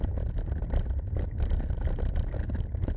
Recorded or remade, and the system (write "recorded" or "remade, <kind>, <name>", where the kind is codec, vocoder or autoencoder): recorded